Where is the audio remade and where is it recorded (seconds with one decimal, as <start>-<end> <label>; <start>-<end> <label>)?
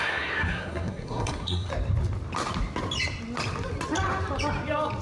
0.0-1.7 remade; 1.7-5.0 recorded